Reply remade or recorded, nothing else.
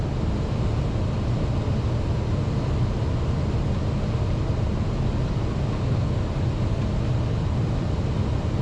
recorded